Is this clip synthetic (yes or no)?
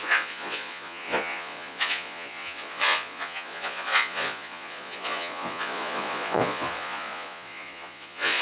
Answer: yes